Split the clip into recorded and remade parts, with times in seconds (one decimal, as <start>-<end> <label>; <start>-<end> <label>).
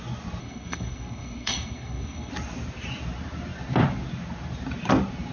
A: 0.0-0.4 recorded; 0.4-2.3 remade; 2.3-5.3 recorded